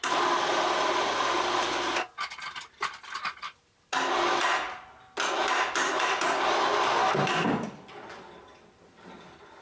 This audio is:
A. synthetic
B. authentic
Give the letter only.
B